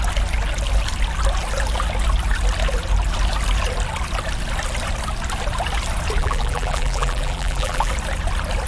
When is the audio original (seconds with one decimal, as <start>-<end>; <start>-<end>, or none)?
0.0-6.2; 7.9-8.7